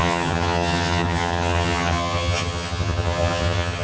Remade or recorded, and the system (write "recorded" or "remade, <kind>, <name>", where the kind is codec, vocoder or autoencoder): remade, vocoder, HiFi-GAN